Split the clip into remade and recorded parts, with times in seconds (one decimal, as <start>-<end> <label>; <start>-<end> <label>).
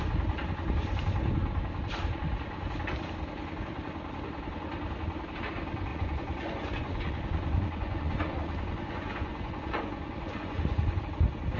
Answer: 0.0-5.9 recorded; 5.9-11.0 remade; 11.0-11.6 recorded